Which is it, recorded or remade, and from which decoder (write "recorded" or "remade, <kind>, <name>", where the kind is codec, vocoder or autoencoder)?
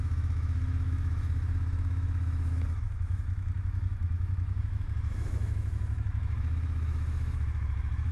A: remade, autoencoder, DAC-VAE